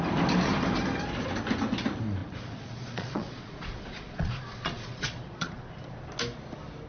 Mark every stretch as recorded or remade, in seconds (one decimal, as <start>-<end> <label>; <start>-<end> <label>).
0.0-2.2 recorded; 2.2-5.7 remade; 5.7-6.9 recorded